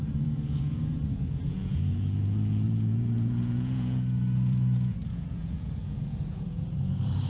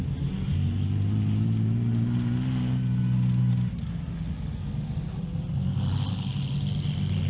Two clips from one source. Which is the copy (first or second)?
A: first